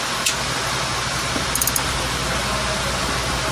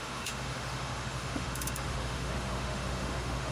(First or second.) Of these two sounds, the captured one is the first